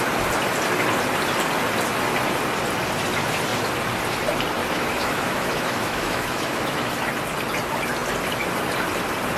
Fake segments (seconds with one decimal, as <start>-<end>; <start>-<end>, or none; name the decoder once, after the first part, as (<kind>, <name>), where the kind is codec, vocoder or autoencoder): 4.6-6.9 (autoencoder, DAC-VAE)